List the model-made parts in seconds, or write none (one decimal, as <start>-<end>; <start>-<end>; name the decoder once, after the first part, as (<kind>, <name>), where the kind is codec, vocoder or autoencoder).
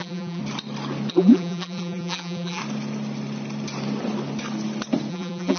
0.0-0.4 (vocoder, BigVGAN v2); 1.1-2.6; 5.1-5.6